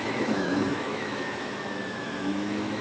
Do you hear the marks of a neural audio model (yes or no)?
yes